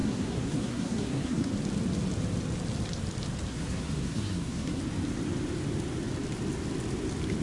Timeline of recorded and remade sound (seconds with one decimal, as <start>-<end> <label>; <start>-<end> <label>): 0.0-1.5 remade; 1.5-3.5 recorded; 3.5-4.8 remade; 4.8-7.4 recorded